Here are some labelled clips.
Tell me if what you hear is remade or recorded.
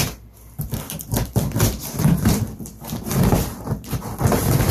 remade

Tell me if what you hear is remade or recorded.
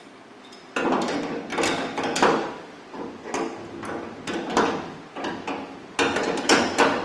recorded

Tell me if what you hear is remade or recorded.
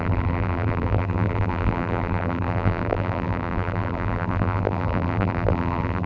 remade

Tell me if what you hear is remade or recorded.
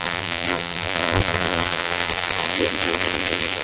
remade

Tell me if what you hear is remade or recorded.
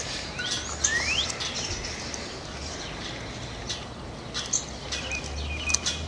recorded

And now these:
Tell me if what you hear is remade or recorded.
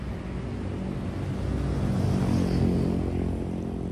recorded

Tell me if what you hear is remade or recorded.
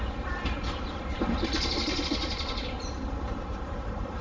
remade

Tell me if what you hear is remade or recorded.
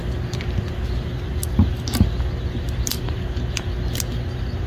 recorded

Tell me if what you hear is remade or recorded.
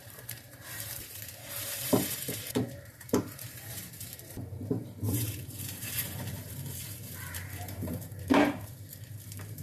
remade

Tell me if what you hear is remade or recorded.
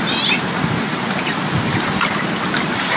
recorded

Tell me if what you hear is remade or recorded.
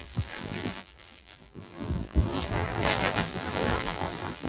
remade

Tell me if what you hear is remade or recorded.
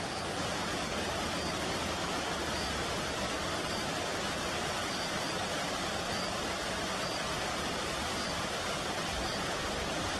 remade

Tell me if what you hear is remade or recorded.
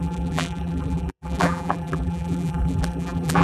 remade